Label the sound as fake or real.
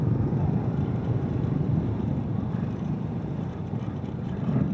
fake